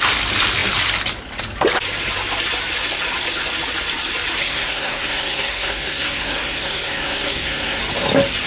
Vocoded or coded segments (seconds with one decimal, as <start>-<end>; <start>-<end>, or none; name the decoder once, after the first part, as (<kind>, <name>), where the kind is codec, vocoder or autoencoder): 4.4-7.8 (codec, SNAC)